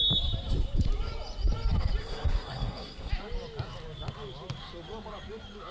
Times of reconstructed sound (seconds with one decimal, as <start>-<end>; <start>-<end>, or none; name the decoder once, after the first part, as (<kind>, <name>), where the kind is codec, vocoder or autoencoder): 2.0-3.1 (codec, SNAC)